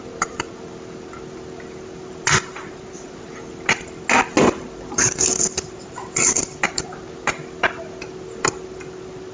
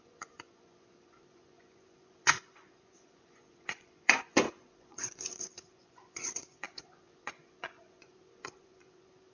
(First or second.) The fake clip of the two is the second